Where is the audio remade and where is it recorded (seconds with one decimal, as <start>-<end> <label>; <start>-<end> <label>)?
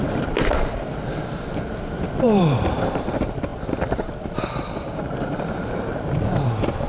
0.0-6.9 remade